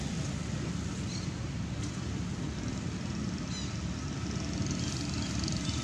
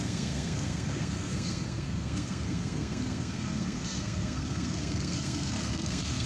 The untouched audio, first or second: first